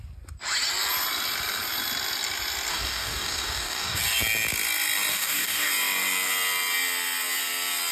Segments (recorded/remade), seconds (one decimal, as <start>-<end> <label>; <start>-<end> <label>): 0.0-2.7 recorded; 2.7-4.0 remade; 4.0-5.1 recorded; 5.1-5.7 remade; 5.7-7.9 recorded